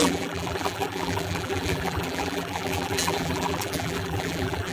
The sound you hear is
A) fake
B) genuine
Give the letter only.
A